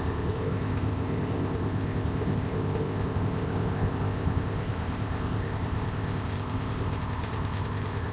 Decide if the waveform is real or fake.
fake